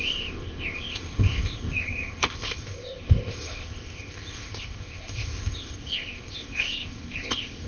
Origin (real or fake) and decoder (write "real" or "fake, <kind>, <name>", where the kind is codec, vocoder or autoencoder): fake, codec, ZipCodec